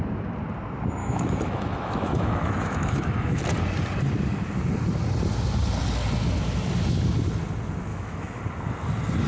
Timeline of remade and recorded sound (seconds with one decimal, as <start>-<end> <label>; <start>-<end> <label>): 0.0-1.0 recorded; 1.0-3.4 remade; 3.4-7.9 recorded; 7.9-8.4 remade; 8.4-9.3 recorded